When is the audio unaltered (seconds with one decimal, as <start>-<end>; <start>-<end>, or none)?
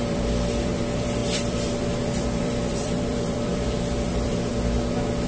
4.5-5.3